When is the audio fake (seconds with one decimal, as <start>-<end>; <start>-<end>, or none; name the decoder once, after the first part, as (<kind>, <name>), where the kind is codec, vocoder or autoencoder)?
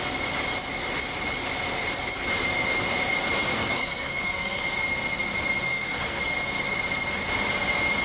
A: 3.5-4.6 (codec, SNAC); 5.7-6.2